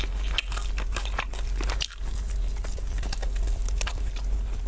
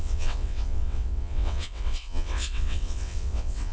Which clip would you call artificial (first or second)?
second